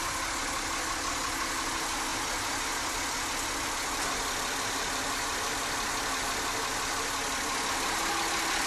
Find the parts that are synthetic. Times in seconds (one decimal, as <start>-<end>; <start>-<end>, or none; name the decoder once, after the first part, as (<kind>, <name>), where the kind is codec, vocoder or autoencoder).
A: none